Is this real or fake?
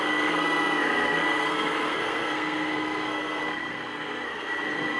fake